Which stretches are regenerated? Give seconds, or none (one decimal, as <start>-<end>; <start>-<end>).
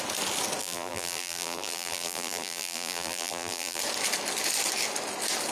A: 0.6-3.8